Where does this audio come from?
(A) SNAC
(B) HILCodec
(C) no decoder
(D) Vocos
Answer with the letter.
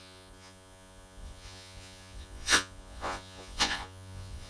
D